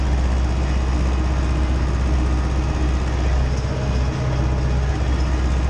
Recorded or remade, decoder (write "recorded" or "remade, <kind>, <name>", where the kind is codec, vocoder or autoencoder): recorded